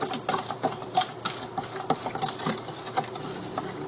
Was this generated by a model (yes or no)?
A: no